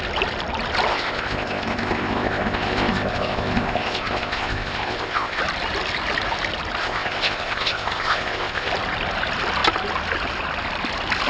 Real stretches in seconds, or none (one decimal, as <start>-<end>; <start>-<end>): 0.0-0.9; 5.4-6.8; 8.7-11.3